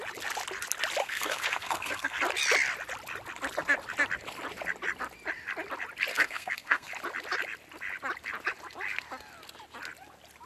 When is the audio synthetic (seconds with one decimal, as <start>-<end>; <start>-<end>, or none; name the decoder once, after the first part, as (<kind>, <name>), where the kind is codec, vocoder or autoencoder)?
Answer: 1.0-2.2 (codec, SNAC); 6.1-6.9